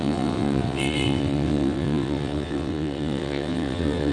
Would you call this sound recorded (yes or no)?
no